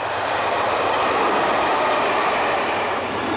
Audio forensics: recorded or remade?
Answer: recorded